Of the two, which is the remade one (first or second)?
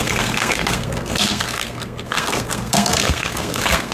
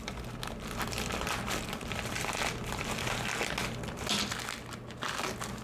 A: first